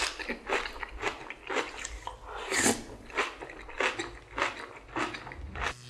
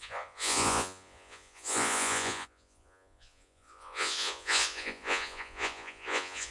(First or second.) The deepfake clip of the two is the second